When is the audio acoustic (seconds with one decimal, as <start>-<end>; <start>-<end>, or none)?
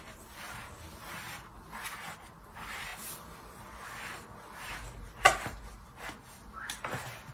0.0-7.3